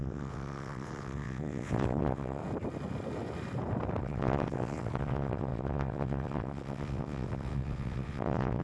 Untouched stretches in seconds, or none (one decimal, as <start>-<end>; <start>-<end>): 2.4-4.0